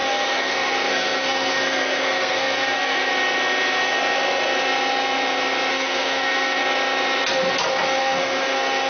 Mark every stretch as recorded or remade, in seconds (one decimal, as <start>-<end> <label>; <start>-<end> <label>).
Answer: 0.0-3.1 remade; 3.1-5.7 recorded; 5.7-6.6 remade; 6.6-8.0 recorded; 8.0-8.9 remade